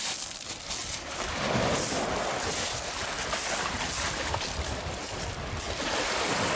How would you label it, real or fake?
real